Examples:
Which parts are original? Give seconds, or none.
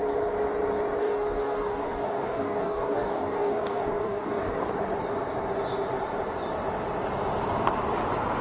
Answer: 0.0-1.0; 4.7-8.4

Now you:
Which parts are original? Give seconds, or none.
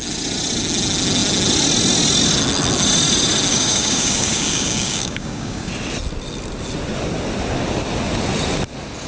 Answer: 0.0-3.5; 5.7-9.1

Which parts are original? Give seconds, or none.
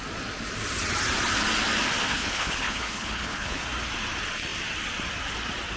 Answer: 0.0-2.1; 3.6-5.8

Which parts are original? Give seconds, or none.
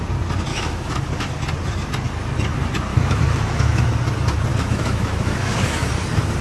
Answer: 0.0-0.5; 1.3-2.9; 3.9-4.5; 5.9-6.4